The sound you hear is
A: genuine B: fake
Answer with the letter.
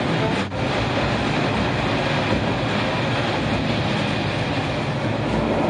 A